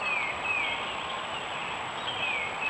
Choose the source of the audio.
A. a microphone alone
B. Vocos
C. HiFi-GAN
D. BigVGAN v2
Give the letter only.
A